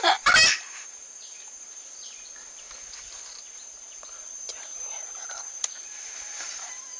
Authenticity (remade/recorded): remade